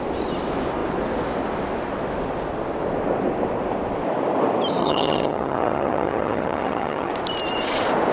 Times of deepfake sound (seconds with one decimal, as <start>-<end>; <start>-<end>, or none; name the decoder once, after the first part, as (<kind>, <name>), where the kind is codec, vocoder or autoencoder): 4.8-7.1 (vocoder, HiFi-GAN)